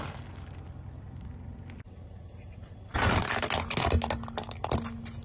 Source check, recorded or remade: recorded